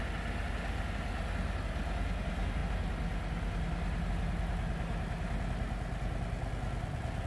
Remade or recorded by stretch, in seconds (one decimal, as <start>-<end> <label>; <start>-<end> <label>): 0.0-2.6 recorded; 2.6-4.1 remade; 4.1-7.3 recorded